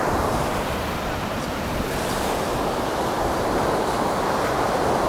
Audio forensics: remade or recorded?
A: remade